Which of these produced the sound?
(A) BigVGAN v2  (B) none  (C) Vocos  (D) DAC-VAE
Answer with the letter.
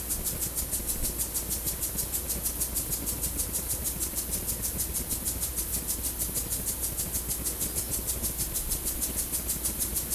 B